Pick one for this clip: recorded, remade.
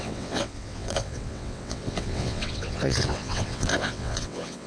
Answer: remade